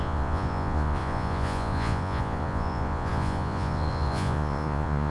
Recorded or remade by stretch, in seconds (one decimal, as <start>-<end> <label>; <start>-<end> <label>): 0.0-5.1 remade